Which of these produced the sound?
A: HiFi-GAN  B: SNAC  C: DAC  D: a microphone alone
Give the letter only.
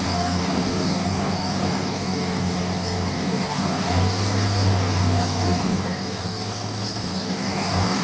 C